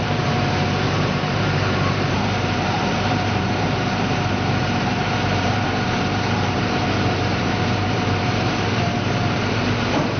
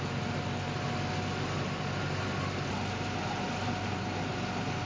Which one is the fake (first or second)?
first